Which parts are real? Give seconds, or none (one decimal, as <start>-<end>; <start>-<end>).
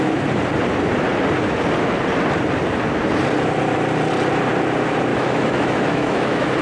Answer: 0.0-5.1